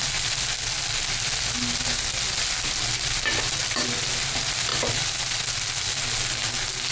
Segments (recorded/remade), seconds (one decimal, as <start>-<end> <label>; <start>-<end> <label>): 0.0-6.9 recorded